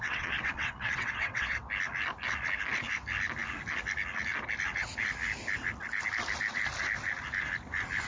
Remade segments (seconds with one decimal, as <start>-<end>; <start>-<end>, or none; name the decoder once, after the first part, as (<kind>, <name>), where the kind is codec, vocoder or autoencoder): 0.0-1.6 (vocoder, WaveNeXt)